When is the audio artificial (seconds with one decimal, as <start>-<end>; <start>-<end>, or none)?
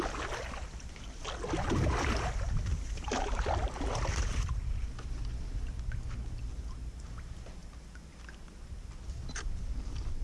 none